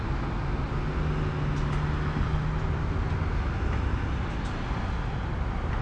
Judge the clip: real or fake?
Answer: real